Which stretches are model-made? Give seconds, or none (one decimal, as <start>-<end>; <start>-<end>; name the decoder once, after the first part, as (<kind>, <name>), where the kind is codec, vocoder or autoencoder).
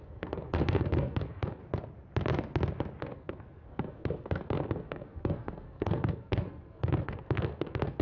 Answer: 0.0-1.6 (codec, SNAC); 3.0-8.0